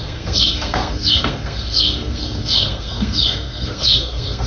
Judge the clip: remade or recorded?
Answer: remade